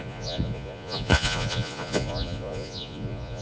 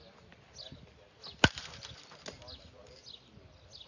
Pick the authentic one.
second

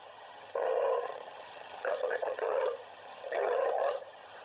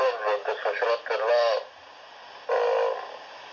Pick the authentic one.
second